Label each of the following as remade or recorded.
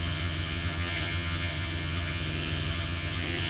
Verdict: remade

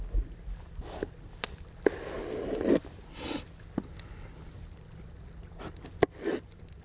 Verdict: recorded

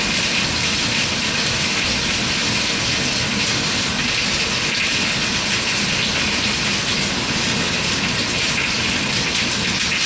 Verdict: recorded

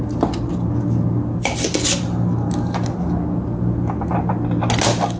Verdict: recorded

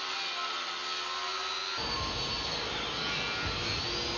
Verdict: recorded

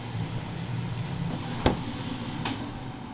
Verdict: recorded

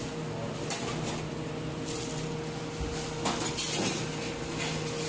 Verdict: recorded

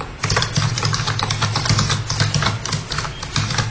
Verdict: recorded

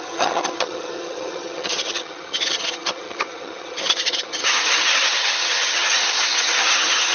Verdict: remade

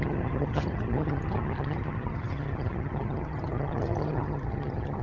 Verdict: remade